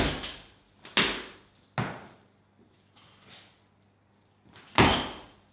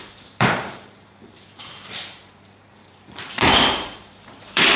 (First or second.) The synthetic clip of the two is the second